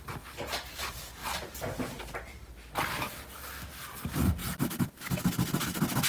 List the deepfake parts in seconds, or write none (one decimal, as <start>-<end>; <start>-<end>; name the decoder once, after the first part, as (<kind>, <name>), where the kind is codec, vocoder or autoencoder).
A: none